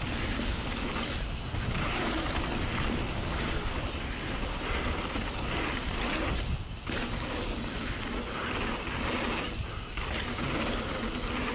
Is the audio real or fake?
real